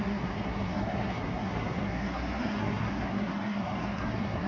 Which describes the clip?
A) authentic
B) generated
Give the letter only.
B